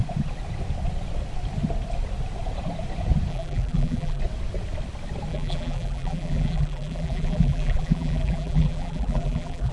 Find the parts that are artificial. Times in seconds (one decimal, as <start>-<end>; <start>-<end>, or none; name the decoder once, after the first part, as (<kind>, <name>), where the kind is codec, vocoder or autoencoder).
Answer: 3.3-4.2 (vocoder, BigVGAN v2); 5.3-9.7